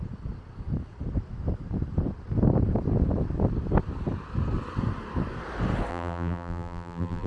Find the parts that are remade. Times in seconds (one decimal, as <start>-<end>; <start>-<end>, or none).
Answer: 5.9-7.3